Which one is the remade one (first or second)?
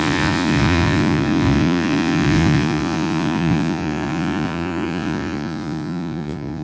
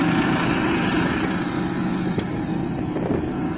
first